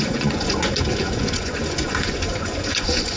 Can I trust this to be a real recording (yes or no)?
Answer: no